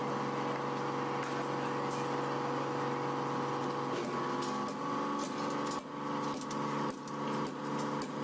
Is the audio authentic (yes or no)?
yes